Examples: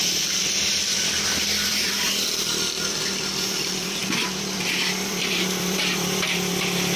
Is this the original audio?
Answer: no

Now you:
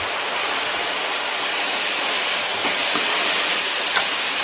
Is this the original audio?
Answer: yes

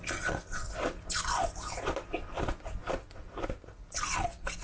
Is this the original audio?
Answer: yes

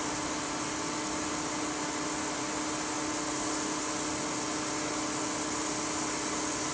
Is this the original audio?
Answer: yes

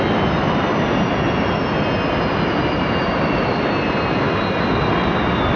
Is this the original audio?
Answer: yes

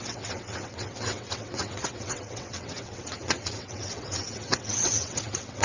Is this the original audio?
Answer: no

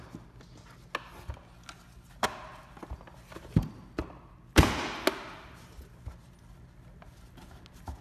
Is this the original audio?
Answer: yes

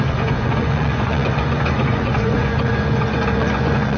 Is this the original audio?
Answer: no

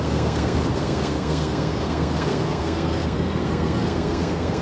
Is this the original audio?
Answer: no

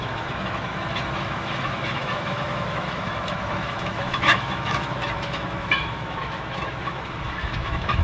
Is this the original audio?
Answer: no